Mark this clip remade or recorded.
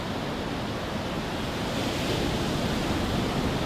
recorded